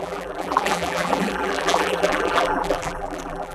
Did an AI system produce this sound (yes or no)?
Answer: yes